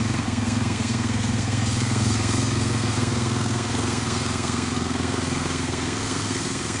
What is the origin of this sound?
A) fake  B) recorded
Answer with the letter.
A